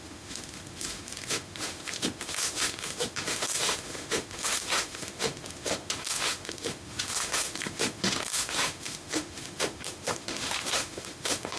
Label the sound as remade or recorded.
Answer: remade